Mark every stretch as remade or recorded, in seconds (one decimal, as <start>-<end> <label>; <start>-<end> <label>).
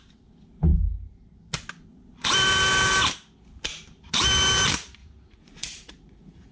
0.0-5.0 recorded; 5.0-6.5 remade